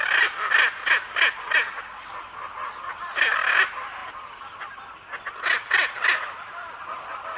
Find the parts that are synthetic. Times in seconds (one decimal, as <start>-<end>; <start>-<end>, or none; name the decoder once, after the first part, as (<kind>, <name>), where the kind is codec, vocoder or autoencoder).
none